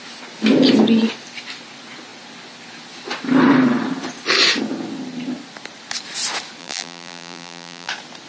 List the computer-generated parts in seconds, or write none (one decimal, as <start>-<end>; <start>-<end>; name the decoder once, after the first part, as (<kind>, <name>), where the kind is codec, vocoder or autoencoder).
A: 6.6-7.9 (vocoder, BigVGAN v2)